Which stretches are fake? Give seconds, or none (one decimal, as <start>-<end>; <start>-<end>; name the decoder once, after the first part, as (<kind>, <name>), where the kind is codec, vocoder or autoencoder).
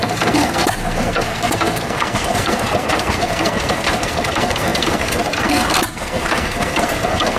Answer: 0.0-7.4 (codec, SNAC)